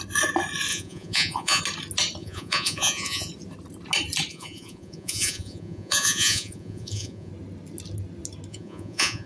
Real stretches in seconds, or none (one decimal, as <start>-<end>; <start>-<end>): 0.0-0.7; 1.6-2.2; 3.3-4.3; 7.3-8.5